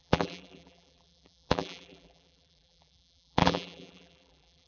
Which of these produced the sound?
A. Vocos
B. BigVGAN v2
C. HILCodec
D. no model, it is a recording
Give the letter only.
B